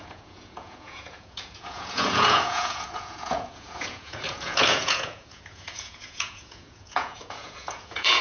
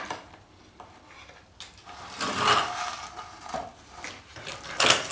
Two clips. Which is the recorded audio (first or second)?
second